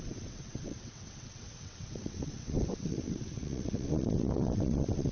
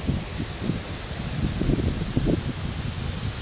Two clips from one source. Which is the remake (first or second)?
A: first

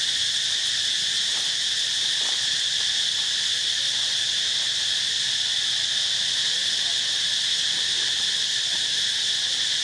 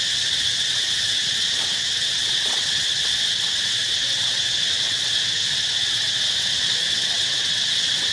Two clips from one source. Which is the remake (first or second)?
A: second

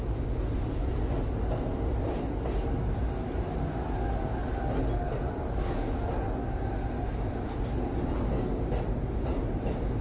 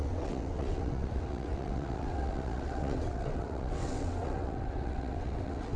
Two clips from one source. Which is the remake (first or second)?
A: second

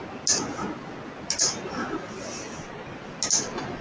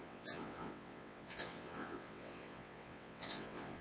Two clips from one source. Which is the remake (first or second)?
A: second